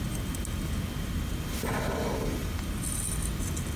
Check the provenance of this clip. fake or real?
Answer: real